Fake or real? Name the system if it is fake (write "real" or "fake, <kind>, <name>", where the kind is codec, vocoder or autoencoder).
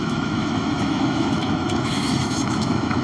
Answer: fake, autoencoder, DAC-VAE